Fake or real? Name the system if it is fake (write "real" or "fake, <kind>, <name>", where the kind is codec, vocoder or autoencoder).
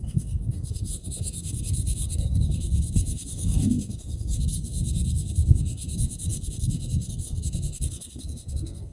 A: fake, codec, SNAC